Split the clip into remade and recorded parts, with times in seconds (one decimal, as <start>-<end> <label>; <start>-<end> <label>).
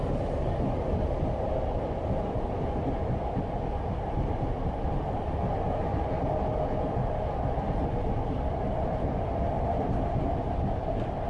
0.0-11.3 recorded